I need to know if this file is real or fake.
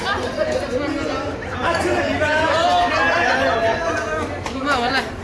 real